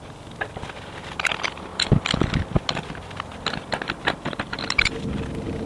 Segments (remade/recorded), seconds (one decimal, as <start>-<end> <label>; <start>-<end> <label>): 0.0-5.7 recorded